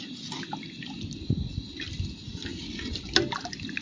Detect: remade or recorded recorded